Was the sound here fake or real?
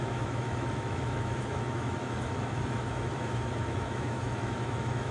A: fake